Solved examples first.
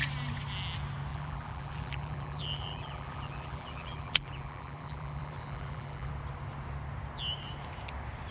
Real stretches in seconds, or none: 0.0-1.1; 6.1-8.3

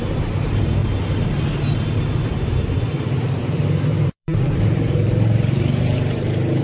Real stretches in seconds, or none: 0.8-2.9

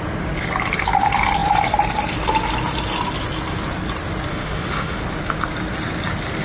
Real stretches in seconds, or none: 0.0-4.3; 5.0-6.4

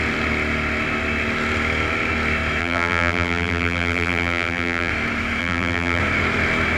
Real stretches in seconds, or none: 0.0-2.6; 4.9-5.4; 6.0-6.8

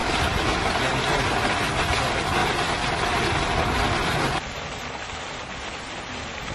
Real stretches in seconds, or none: 0.7-6.5

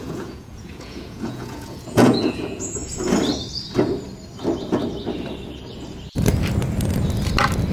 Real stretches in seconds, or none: 2.8-7.7